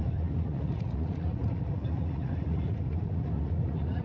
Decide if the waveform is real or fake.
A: fake